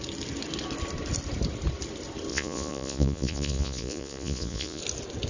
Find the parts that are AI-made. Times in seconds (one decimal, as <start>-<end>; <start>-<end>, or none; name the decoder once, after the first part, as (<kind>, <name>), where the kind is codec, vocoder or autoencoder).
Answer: 2.3-4.8 (vocoder, Vocos)